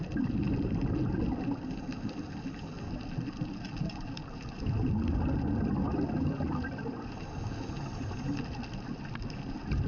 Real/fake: real